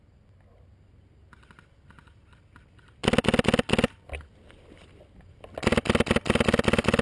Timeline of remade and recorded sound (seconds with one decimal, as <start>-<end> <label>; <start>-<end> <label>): 0.0-7.0 recorded